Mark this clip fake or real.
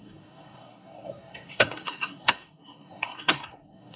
fake